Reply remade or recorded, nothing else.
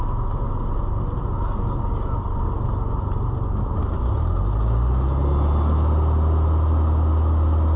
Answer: recorded